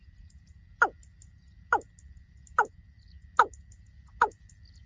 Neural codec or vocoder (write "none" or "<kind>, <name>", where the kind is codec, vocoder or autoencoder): none